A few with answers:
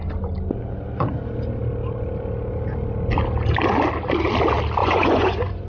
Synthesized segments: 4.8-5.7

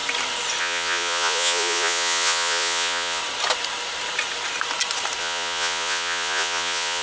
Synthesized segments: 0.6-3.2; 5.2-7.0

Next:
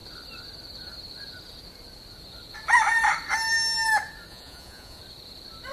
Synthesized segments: 4.3-5.0